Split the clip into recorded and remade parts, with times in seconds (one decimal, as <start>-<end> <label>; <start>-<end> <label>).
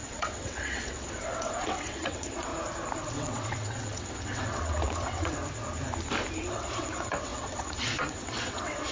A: 0.0-2.5 remade; 2.5-3.1 recorded; 3.1-5.4 remade; 5.4-6.5 recorded; 6.5-8.9 remade